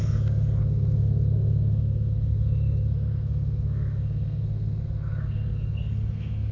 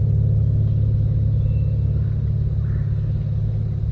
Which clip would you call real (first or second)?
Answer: second